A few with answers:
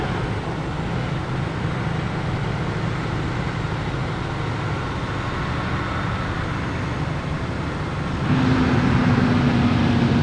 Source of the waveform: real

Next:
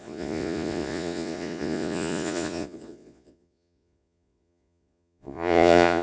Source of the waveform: fake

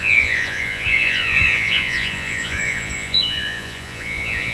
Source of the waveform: fake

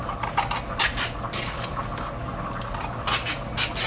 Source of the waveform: real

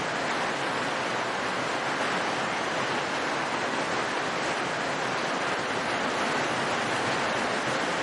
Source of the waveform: real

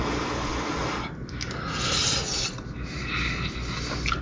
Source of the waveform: real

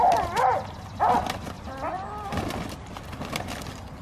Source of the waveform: real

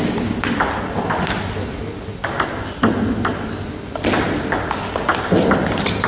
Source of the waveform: real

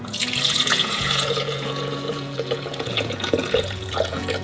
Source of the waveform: fake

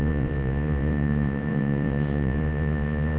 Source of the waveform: fake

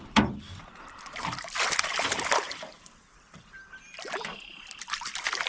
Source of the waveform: real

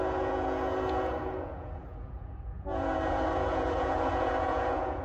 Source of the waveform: fake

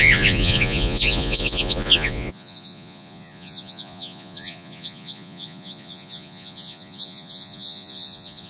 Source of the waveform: fake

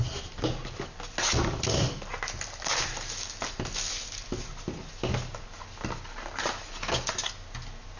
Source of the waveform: real